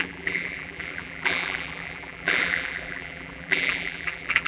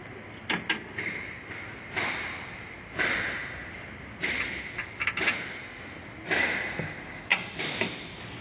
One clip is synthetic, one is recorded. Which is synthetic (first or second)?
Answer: first